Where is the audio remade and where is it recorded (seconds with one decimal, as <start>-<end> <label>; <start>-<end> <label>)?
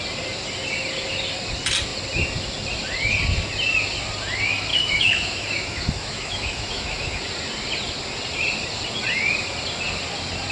0.0-4.7 recorded; 4.7-7.2 remade; 7.2-10.5 recorded